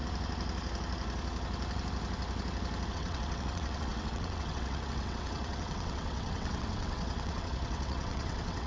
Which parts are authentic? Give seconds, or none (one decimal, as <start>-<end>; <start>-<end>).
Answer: 0.0-2.9

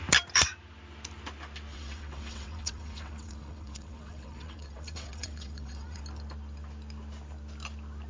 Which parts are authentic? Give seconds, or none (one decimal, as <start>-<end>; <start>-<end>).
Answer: 0.0-1.7; 6.0-8.1

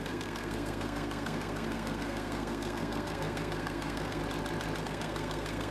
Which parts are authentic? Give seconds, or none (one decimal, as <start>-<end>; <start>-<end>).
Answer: 4.2-4.8

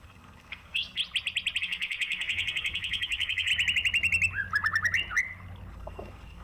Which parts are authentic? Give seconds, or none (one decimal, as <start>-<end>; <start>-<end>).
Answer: 1.0-1.6; 3.5-5.7

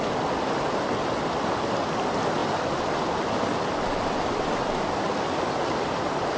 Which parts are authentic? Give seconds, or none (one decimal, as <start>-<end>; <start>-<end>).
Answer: 0.0-6.4

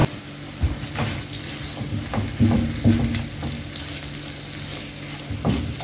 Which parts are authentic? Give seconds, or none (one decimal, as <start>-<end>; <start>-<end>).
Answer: 0.0-5.8

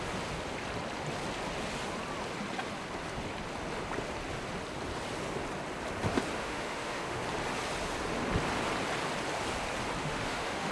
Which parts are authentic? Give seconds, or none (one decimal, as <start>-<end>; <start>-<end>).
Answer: 0.0-6.4; 7.2-10.0

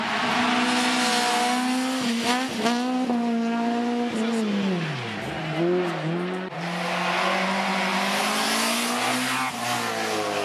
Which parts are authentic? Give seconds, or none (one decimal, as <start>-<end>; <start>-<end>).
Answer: 0.0-10.4